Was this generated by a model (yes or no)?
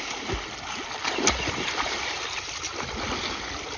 no